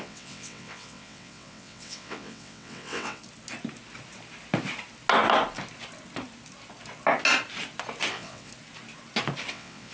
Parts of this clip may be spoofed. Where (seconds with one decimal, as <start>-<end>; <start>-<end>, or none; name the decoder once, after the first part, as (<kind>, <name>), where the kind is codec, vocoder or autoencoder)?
0.0-3.2 (vocoder, WaveNeXt); 8.1-8.5; 9.5-9.9